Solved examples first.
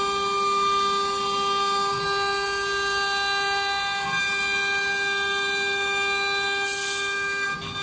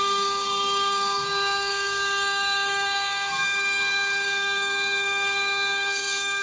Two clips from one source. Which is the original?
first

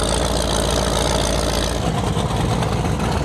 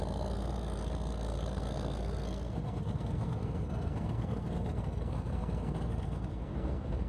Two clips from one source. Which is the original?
first